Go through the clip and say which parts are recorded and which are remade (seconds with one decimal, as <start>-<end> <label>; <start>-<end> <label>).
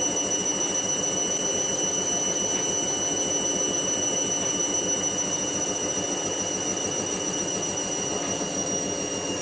0.0-6.7 recorded; 6.7-7.3 remade; 7.3-9.4 recorded